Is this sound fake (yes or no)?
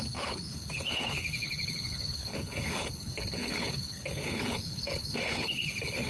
yes